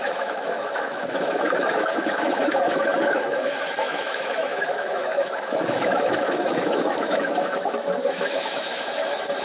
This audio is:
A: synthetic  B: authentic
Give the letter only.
A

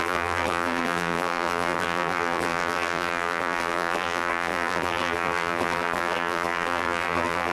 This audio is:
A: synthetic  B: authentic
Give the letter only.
A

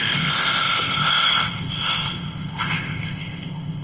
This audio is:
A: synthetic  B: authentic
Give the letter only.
A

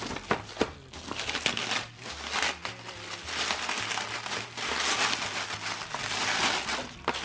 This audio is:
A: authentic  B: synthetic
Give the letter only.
A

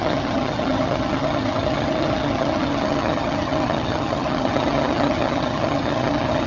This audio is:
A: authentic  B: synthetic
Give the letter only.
B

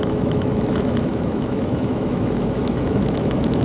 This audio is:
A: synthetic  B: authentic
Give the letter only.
A